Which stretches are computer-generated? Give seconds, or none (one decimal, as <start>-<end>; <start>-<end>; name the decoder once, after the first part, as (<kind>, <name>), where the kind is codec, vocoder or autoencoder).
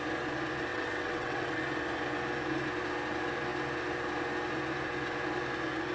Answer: 0.7-1.6 (vocoder, WaveNeXt)